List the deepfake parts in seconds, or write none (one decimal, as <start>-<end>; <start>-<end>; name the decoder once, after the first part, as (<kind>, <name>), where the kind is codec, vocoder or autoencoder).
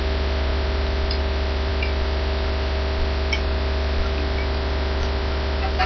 none